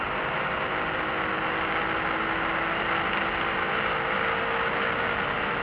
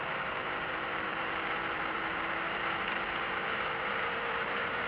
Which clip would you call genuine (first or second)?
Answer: first